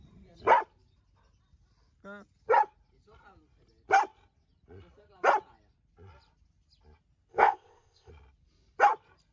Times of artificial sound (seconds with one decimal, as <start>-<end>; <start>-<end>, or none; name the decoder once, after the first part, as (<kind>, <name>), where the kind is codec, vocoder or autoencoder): 7.3-8.1 (codec, ZipCodec)